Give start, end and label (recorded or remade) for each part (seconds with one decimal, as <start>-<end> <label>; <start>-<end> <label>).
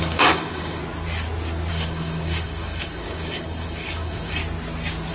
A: 0.0-0.8 remade; 0.8-1.7 recorded; 1.7-4.4 remade; 4.4-5.1 recorded